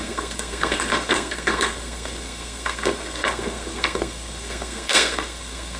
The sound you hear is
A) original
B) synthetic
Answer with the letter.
B